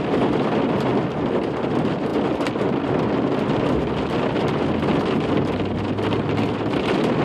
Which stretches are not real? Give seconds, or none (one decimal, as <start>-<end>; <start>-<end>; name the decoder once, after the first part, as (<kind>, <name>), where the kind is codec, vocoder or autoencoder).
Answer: none